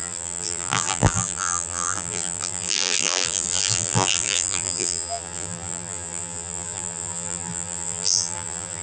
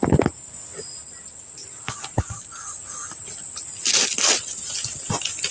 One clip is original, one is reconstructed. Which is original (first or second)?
second